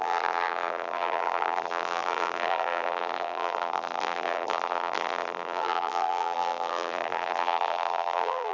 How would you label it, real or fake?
fake